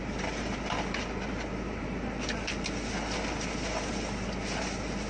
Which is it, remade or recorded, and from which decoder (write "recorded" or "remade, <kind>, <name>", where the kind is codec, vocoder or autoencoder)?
recorded